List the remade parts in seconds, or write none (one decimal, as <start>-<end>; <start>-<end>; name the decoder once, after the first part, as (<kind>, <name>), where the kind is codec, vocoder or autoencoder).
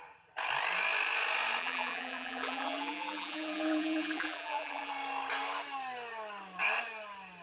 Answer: 1.6-4.9 (vocoder, BigVGAN v2)